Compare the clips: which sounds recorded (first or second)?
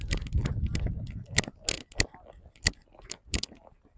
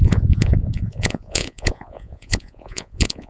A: first